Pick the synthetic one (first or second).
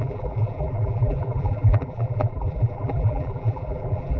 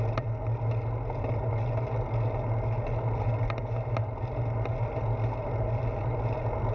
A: first